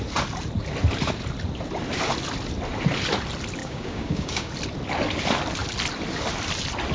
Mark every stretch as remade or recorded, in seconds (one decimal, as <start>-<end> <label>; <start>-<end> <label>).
0.0-3.6 recorded; 3.6-4.5 remade; 4.5-6.9 recorded